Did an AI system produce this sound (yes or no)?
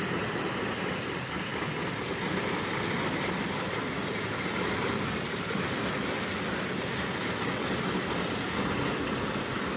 no